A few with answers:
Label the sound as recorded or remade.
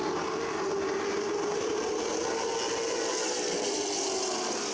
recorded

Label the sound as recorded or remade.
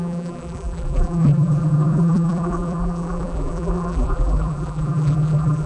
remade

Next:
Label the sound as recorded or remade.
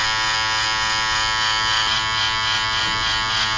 recorded